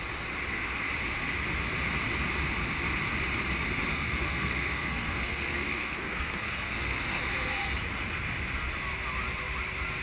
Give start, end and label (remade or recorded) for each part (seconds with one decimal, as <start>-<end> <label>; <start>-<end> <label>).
0.0-3.9 recorded; 3.9-7.2 remade; 7.2-10.0 recorded